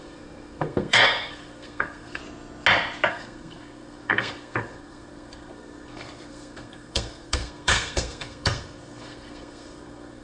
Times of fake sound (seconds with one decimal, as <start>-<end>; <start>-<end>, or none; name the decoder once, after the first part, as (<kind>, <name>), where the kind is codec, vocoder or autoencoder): 0.0-2.2 (codec, SNAC); 3.1-10.2